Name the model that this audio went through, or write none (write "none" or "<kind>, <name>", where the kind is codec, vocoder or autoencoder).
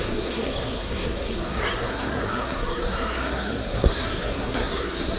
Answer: codec, SNAC